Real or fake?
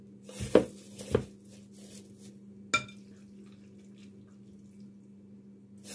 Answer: real